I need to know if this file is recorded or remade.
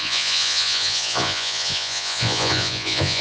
remade